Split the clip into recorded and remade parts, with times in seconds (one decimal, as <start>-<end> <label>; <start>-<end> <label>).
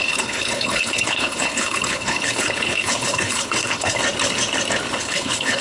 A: 0.0-4.0 remade; 4.0-4.9 recorded; 4.9-5.6 remade